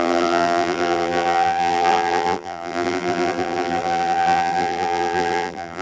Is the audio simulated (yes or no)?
yes